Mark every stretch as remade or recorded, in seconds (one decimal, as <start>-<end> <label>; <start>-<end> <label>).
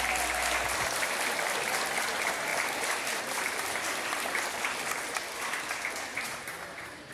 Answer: 0.0-6.1 recorded; 6.1-7.1 remade